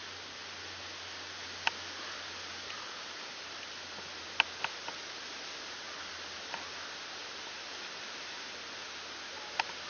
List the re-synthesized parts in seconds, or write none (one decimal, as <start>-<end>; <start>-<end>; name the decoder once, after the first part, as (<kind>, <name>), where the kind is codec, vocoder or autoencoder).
none